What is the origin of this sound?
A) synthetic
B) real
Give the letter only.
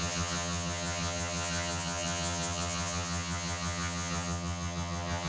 A